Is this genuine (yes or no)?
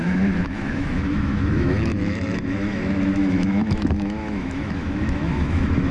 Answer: no